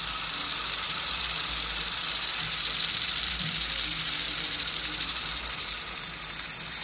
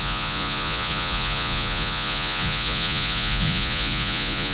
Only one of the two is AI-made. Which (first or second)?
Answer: second